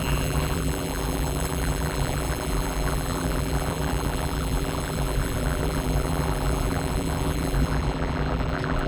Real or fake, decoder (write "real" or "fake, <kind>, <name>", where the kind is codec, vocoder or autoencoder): fake, vocoder, BigVGAN v2